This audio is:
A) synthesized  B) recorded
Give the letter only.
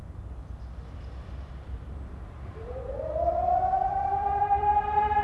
A